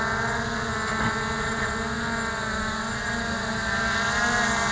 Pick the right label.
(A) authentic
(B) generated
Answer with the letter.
A